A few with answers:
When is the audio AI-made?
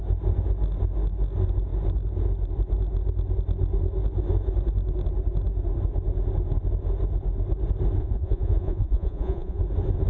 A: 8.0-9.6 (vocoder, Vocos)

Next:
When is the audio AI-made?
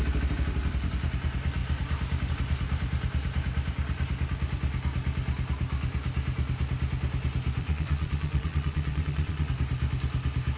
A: 7.6-9.5 (vocoder, Vocos)